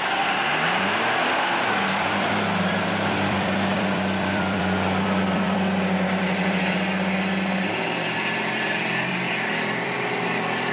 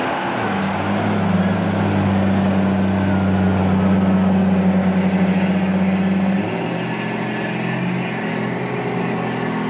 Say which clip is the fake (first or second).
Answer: first